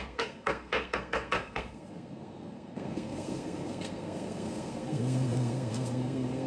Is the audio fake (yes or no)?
yes